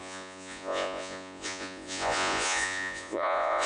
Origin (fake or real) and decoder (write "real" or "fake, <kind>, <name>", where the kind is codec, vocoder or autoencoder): fake, vocoder, Vocos